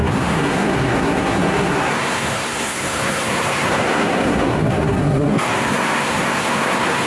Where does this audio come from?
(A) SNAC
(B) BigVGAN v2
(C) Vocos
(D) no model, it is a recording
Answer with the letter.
A